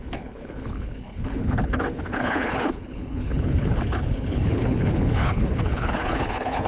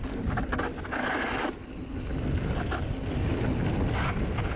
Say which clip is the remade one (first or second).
first